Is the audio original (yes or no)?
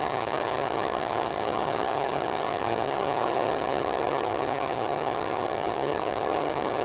no